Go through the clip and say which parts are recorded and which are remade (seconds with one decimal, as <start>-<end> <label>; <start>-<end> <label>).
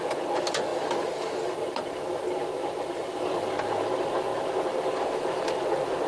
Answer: 0.0-6.1 recorded